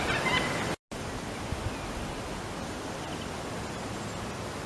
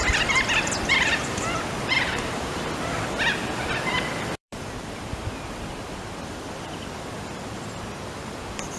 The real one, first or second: first